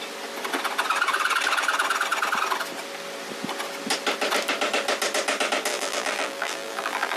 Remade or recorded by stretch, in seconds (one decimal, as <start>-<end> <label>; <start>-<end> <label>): 0.0-5.7 recorded; 5.7-7.2 remade